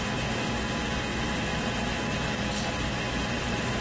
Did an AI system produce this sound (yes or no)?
no